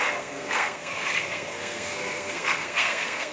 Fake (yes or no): yes